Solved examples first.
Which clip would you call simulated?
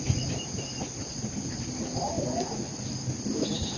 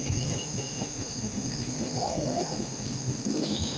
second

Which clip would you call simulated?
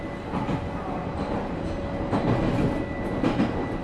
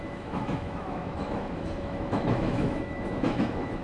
second